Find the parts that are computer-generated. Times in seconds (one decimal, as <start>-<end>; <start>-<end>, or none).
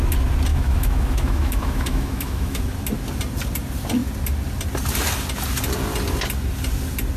0.5-2.6